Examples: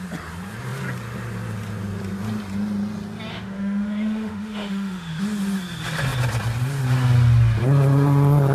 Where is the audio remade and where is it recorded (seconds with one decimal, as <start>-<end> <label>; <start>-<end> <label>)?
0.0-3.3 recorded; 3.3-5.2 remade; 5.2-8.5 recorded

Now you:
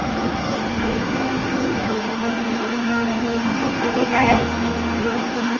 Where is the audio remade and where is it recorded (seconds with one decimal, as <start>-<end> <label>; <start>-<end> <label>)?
0.0-4.4 remade; 4.4-5.0 recorded; 5.0-5.6 remade

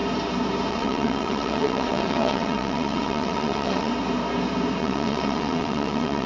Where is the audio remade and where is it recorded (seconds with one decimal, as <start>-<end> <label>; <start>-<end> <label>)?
0.0-0.7 recorded; 0.7-3.9 remade; 3.9-4.8 recorded; 4.8-6.3 remade

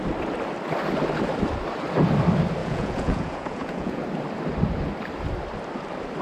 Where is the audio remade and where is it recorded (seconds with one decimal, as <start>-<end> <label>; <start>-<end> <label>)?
0.0-2.6 recorded; 2.6-4.0 remade; 4.0-6.2 recorded

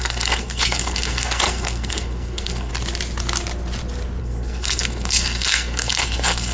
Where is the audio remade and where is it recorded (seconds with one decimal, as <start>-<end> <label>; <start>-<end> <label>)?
0.0-2.7 remade; 2.7-4.2 recorded; 4.2-6.5 remade

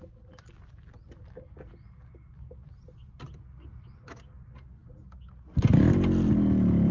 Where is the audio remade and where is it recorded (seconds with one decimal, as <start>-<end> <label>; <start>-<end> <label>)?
0.0-6.9 recorded

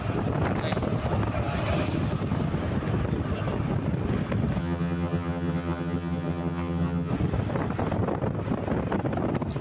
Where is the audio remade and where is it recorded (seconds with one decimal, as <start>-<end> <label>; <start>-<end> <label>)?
0.0-4.6 recorded; 4.6-7.1 remade; 7.1-9.6 recorded